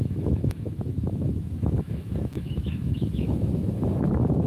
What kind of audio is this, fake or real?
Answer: fake